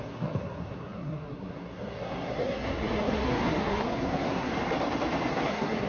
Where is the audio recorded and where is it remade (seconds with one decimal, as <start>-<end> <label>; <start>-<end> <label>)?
0.0-4.5 remade; 4.5-5.3 recorded; 5.3-5.9 remade